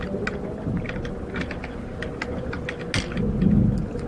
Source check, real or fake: real